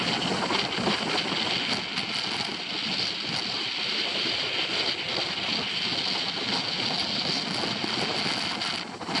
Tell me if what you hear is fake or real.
real